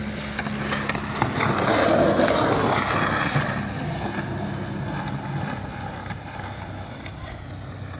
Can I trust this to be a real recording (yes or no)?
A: yes